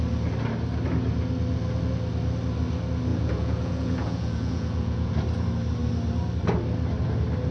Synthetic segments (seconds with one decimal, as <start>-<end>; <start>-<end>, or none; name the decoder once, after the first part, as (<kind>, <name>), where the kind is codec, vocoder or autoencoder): 3.1-5.1 (vocoder, Vocos)